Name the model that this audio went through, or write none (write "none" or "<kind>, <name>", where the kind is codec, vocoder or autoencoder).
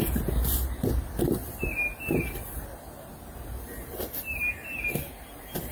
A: none